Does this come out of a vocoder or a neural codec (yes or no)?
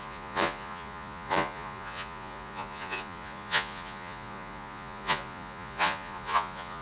yes